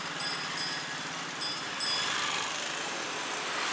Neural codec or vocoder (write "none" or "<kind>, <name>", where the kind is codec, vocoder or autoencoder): none